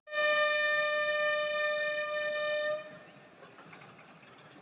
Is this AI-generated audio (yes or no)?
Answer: no